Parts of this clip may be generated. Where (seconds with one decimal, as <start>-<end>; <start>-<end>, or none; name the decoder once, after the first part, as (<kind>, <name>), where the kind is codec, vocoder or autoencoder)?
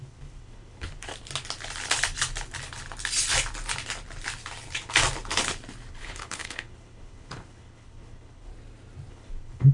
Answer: 0.0-1.1 (codec, HILCodec); 5.9-8.5; 9.1-9.7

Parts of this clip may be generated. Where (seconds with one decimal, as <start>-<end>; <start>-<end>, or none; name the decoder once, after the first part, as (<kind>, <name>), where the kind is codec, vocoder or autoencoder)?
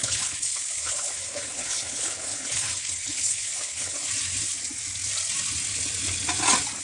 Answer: 0.0-4.1 (codec, HILCodec)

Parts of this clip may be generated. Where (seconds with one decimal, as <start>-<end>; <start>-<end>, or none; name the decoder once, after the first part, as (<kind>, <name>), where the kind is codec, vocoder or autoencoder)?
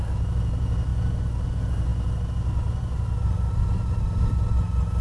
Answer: none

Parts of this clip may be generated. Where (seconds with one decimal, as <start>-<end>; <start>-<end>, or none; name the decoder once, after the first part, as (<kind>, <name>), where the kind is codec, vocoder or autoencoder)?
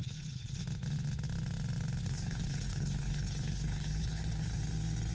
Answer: 0.0-0.6 (codec, HILCodec); 2.0-4.6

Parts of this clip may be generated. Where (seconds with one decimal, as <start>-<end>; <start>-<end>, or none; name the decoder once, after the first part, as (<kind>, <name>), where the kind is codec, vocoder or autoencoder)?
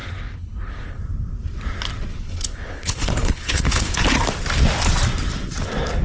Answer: 0.0-1.0 (codec, HILCodec); 2.1-4.0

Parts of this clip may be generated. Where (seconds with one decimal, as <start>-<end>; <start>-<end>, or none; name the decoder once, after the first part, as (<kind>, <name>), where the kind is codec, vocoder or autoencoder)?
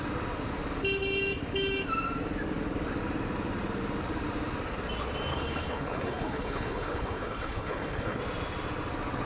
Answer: 5.3-8.2 (codec, HILCodec)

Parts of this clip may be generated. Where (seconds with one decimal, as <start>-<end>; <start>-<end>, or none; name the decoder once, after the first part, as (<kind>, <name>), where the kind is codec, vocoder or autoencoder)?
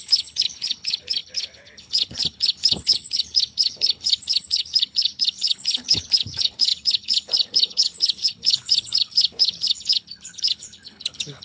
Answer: 0.0-11.4 (codec, HILCodec)